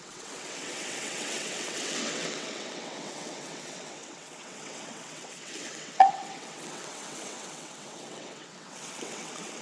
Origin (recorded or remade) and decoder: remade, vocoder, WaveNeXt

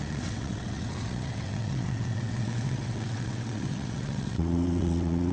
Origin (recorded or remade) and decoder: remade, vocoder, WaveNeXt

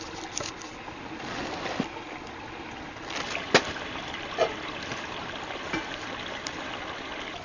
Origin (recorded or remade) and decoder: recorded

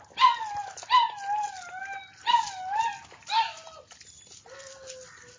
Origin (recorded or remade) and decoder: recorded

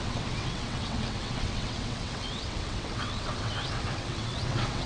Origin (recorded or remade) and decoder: remade, vocoder, WaveNeXt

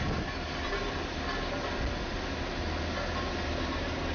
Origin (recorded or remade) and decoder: recorded